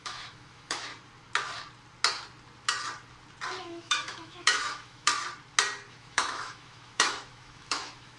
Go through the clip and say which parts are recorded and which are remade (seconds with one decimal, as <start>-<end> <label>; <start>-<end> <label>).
0.0-0.9 remade; 0.9-3.6 recorded; 3.6-5.1 remade; 5.1-5.9 recorded; 5.9-8.2 remade